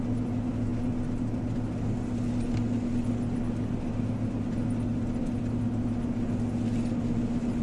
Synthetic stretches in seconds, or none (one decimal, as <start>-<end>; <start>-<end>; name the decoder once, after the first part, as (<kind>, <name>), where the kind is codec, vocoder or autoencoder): none